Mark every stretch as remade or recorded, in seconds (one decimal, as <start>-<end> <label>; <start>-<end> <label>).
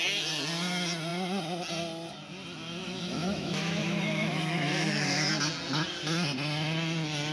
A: 0.0-2.8 recorded; 2.8-5.3 remade; 5.3-7.3 recorded